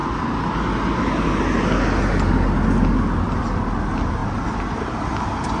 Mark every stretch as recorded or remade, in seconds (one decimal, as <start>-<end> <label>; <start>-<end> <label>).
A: 0.0-5.6 recorded

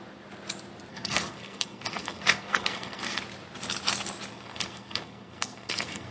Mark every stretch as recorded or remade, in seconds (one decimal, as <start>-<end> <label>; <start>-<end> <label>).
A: 0.0-0.9 recorded; 0.9-3.2 remade; 3.2-4.3 recorded; 4.3-6.1 remade